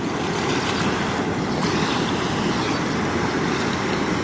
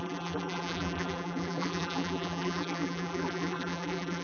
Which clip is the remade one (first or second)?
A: second